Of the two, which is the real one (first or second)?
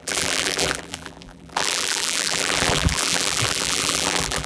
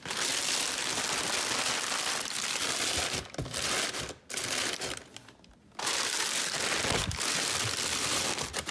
second